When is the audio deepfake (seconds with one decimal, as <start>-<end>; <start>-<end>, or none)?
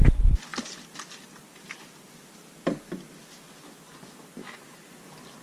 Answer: none